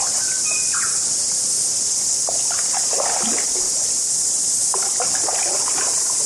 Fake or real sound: real